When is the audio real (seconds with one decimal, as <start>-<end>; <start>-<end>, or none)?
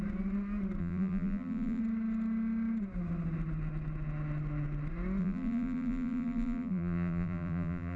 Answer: 0.0-0.8; 1.8-5.2